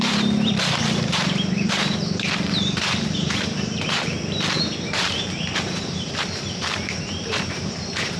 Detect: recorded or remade remade